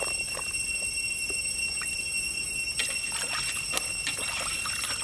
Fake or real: real